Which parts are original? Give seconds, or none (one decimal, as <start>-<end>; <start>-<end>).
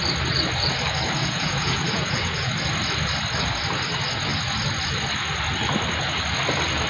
0.0-1.2; 2.5-6.9